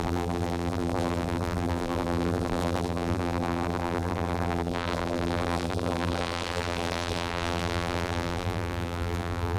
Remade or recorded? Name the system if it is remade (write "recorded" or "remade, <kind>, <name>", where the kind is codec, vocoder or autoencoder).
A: remade, vocoder, BigVGAN v2